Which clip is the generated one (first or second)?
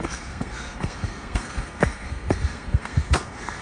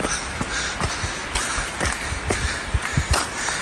first